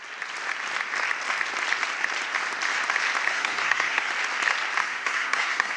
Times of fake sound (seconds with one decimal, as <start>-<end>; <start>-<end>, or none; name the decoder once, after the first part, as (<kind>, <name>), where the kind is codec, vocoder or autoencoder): 3.3-4.1 (codec, SNAC); 4.8-5.8